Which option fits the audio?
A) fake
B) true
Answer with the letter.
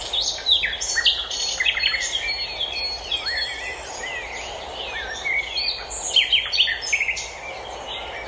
B